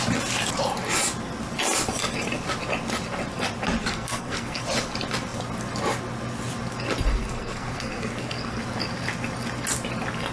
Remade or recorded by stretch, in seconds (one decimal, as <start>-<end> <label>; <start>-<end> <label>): 0.0-3.8 recorded; 3.8-4.6 remade; 4.6-7.1 recorded; 7.1-8.6 remade; 8.6-10.3 recorded